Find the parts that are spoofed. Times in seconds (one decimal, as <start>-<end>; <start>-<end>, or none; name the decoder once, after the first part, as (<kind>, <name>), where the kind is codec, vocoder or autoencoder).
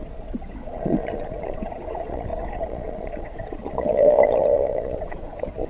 0.0-5.7 (vocoder, Vocos)